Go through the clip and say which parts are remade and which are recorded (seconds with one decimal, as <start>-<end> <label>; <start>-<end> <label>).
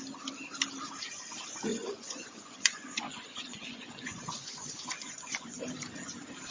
0.0-1.7 recorded; 1.7-5.6 remade; 5.6-6.5 recorded